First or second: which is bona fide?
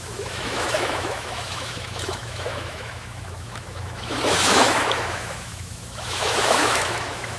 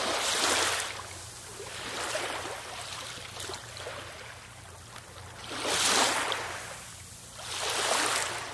second